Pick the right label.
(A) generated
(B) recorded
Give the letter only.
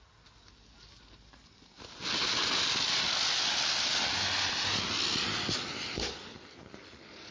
B